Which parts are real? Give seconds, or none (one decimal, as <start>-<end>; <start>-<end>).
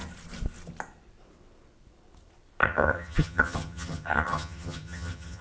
0.0-2.6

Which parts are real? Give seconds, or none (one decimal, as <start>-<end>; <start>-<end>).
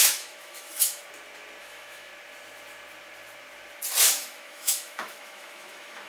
1.0-1.6; 2.1-4.1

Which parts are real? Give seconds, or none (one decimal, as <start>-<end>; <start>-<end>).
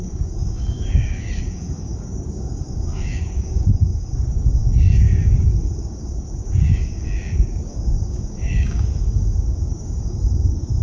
none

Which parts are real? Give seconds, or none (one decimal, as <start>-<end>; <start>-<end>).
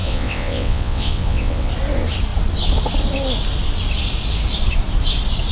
1.7-5.5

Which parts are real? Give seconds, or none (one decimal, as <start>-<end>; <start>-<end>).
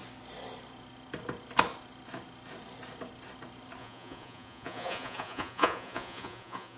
0.0-3.8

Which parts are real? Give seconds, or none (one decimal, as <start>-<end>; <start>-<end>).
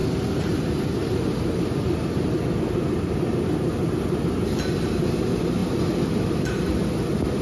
0.0-7.4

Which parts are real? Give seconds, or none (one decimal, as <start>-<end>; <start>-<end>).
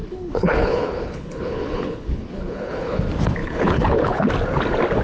3.0-3.4; 4.3-5.0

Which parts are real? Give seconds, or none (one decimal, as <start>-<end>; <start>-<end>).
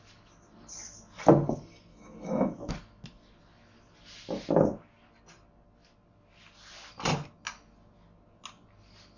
0.0-1.9; 2.7-9.2